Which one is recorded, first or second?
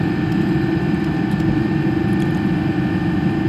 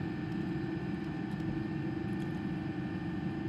second